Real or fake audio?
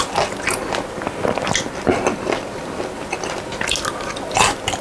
real